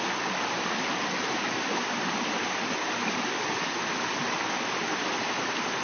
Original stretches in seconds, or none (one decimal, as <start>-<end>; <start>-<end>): 0.0-5.8